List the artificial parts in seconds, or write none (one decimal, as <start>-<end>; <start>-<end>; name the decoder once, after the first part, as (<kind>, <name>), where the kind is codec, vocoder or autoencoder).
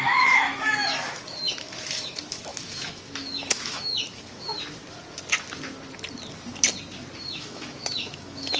0.0-4.5 (autoencoder, DAC-VAE); 7.3-8.6